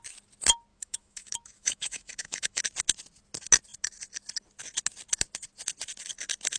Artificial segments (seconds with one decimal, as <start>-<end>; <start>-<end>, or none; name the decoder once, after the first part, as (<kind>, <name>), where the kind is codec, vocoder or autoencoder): 0.7-2.6 (autoencoder, DAC-VAE)